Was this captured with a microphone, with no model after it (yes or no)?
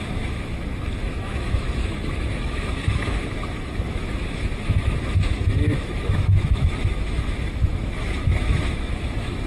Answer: no